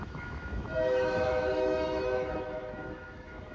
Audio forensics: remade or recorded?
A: remade